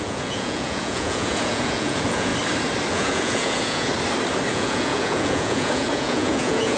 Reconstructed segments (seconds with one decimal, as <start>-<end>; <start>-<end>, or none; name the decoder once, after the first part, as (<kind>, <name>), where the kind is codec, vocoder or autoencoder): 0.0-2.3 (vocoder, Vocos); 2.9-3.9; 4.5-6.8